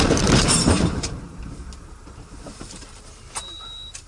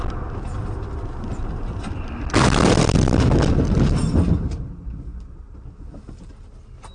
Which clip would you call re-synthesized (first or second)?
first